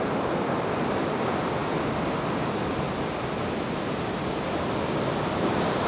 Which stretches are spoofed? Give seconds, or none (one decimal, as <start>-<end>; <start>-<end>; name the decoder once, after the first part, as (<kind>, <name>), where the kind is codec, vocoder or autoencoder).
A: none